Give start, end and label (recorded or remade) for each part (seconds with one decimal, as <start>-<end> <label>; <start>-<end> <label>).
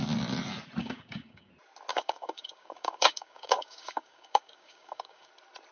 0.0-0.8 recorded; 0.8-1.5 remade; 1.5-1.9 recorded; 1.9-5.3 remade; 5.3-5.7 recorded